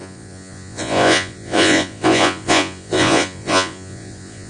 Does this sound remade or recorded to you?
remade